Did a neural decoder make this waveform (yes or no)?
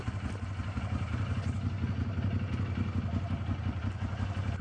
no